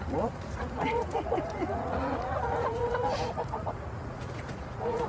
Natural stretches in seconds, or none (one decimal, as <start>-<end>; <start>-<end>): none